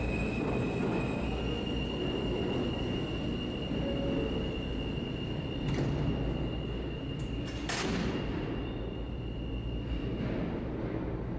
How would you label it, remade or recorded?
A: recorded